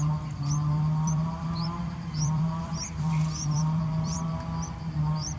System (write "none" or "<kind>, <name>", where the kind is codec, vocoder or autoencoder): vocoder, BigVGAN v2